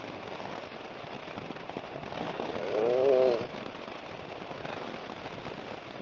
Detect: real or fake real